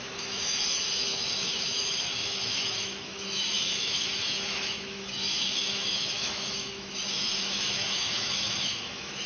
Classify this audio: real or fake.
fake